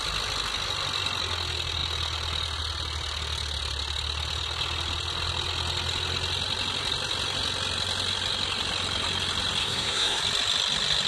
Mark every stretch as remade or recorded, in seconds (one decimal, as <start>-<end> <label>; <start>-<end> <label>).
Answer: 0.0-9.6 recorded; 9.6-10.2 remade; 10.2-11.1 recorded